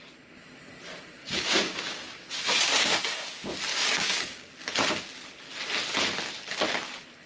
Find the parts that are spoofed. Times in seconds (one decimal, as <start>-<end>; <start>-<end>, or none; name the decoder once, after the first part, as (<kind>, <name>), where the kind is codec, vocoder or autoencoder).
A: 1.2-3.3 (codec, DAC); 3.7-4.5